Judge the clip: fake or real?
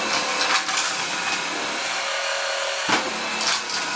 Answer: real